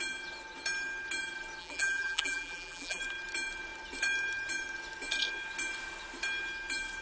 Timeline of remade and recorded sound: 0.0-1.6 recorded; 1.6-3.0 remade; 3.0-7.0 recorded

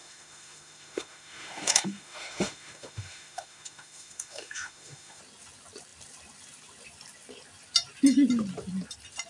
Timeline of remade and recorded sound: 0.0-5.2 remade; 5.2-9.3 recorded

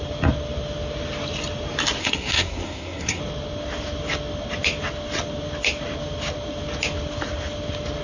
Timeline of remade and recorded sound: 0.0-2.0 recorded; 2.0-3.2 remade; 3.2-8.0 recorded

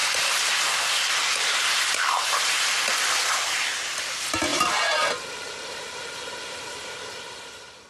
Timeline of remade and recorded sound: 0.0-7.9 recorded